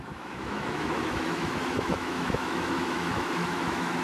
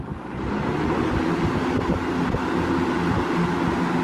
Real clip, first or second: second